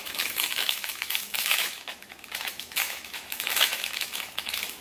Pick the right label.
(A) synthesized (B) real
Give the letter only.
A